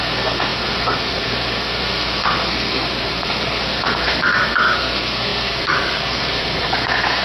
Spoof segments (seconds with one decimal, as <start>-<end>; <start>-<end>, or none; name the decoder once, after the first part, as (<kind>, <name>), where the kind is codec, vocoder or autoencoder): 0.0-7.2 (codec, SNAC)